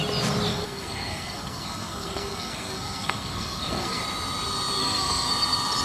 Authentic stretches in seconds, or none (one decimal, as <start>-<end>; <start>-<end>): 0.0-0.5; 4.0-4.8; 5.3-5.8